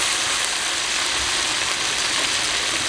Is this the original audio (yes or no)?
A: yes